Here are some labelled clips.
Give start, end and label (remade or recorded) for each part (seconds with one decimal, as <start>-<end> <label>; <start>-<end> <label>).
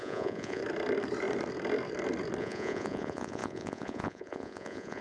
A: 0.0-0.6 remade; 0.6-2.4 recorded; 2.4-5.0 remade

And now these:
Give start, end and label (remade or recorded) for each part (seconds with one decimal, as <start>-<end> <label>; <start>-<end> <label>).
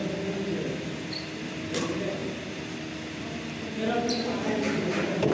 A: 0.0-5.3 recorded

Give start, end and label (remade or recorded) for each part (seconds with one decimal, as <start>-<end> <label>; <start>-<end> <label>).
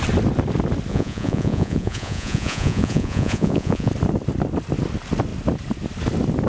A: 0.0-0.9 recorded; 0.9-3.9 remade; 3.9-6.5 recorded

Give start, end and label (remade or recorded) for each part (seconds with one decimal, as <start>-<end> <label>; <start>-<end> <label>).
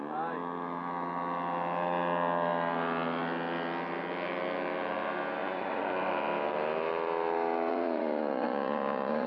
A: 0.0-5.4 recorded; 5.4-6.1 remade; 6.1-7.7 recorded; 7.7-9.3 remade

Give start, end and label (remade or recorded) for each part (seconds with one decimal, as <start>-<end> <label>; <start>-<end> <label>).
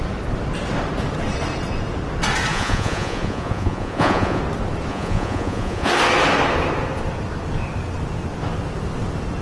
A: 0.0-2.5 recorded; 2.5-4.4 remade; 4.4-4.9 recorded; 4.9-5.9 remade; 5.9-9.4 recorded